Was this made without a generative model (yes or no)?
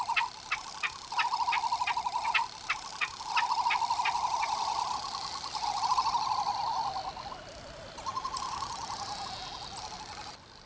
yes